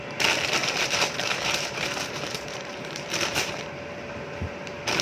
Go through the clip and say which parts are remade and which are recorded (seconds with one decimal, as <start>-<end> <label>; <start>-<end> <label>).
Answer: 0.0-0.6 recorded; 0.6-3.6 remade; 3.6-5.0 recorded